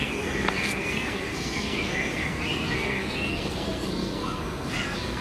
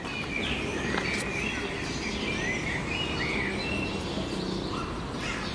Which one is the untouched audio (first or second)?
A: second